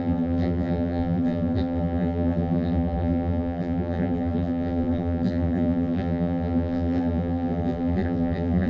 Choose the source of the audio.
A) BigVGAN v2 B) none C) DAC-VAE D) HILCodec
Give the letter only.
A